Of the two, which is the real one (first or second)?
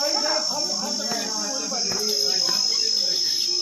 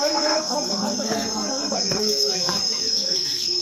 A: first